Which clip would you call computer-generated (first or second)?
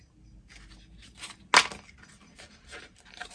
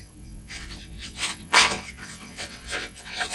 second